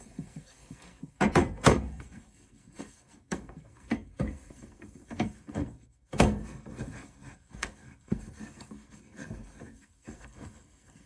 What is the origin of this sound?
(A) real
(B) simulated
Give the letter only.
B